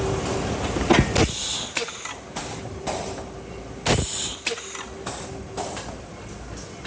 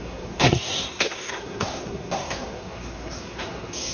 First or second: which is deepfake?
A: second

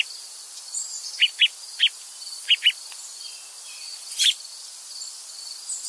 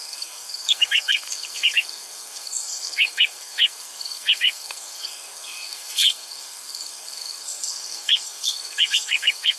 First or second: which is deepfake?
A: second